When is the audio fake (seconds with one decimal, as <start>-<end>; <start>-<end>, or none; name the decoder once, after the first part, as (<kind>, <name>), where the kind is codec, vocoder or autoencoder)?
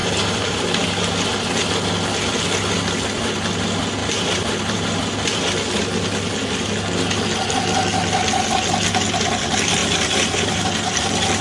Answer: 0.0-0.6 (vocoder, BigVGAN v2); 4.0-4.9; 9.8-10.6